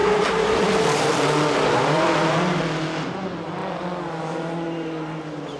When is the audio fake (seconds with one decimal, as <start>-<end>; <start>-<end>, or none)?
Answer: 0.0-2.6